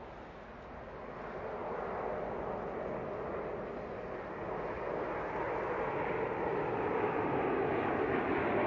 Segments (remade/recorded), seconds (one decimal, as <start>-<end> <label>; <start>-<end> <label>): 0.0-8.7 recorded